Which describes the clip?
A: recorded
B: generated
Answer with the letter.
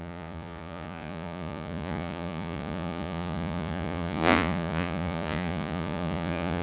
B